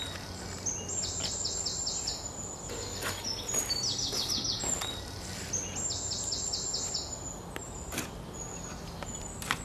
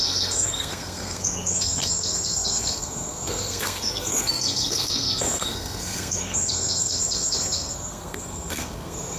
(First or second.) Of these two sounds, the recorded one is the first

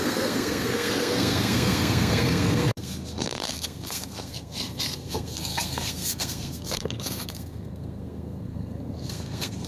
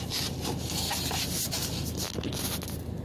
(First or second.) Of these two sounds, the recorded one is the second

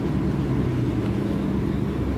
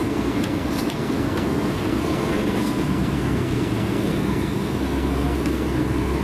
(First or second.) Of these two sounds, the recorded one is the first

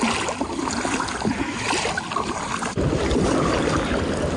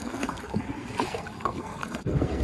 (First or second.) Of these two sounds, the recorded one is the first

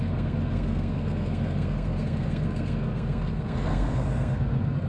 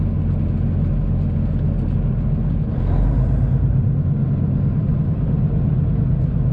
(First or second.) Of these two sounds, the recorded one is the second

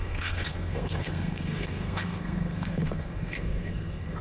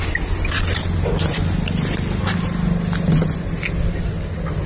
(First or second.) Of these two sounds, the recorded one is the second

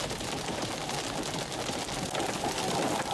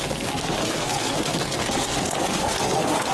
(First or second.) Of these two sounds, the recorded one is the first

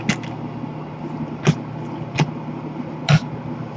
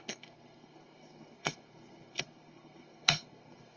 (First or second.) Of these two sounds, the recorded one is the first